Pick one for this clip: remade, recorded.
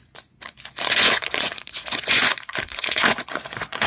remade